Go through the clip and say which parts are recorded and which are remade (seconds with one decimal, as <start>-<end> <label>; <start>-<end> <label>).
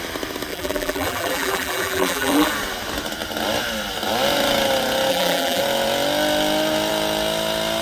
0.0-0.5 recorded; 0.5-2.5 remade; 2.5-5.1 recorded; 5.1-5.6 remade; 5.6-7.8 recorded